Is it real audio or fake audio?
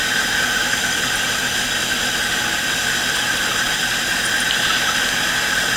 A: real